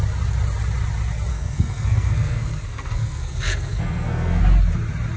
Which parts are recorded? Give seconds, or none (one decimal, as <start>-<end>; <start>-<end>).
0.0-1.3; 4.4-5.2